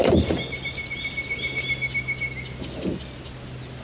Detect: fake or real real